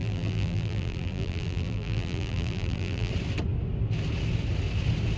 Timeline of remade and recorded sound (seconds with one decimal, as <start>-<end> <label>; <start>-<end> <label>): 0.0-3.1 remade; 3.1-5.2 recorded